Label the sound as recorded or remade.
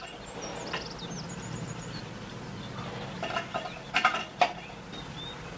recorded